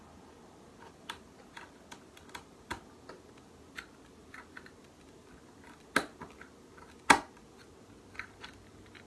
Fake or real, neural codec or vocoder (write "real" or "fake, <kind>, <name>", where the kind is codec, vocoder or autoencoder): real